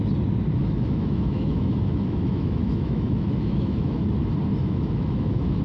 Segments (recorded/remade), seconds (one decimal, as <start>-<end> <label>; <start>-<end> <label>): 0.0-0.6 recorded; 0.6-4.0 remade; 4.0-4.6 recorded; 4.6-5.6 remade